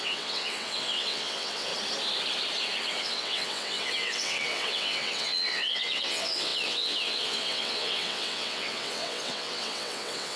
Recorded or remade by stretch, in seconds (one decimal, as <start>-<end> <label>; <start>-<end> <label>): 0.0-1.7 remade; 1.7-3.0 recorded; 3.0-10.4 remade